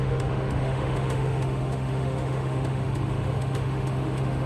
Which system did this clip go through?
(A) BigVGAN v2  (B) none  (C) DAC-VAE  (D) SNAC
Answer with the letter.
C